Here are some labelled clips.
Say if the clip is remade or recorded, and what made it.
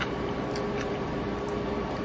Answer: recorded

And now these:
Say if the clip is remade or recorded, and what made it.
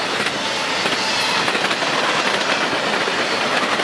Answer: recorded